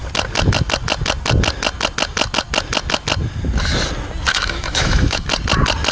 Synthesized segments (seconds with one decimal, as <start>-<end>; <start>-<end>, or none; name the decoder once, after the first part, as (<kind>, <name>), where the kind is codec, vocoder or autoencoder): 4.3-5.3 (autoencoder, DAC-VAE)